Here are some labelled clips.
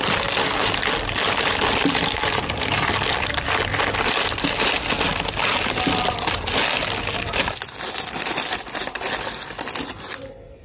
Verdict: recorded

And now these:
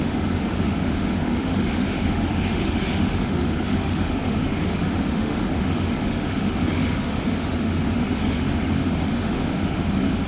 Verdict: remade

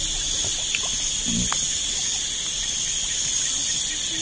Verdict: recorded